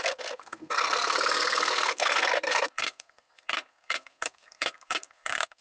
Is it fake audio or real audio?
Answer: fake